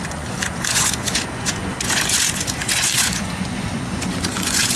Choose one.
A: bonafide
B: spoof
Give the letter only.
B